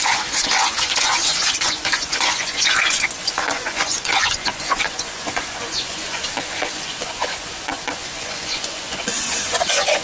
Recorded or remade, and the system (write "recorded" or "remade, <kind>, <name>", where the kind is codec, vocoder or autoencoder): remade, vocoder, Vocos